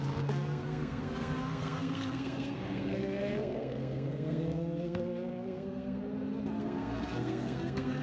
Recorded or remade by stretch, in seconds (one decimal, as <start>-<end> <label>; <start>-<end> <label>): 0.0-6.0 remade; 6.0-6.6 recorded; 6.6-8.0 remade